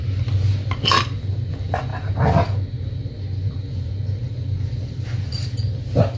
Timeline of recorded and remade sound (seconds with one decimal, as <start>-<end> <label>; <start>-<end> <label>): 0.0-6.2 recorded